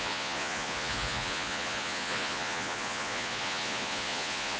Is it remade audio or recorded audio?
remade